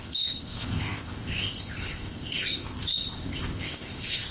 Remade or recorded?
remade